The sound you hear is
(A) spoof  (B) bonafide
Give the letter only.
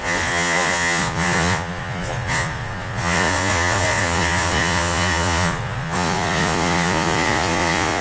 A